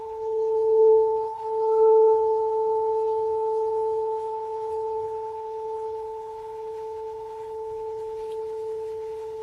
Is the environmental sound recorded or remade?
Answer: remade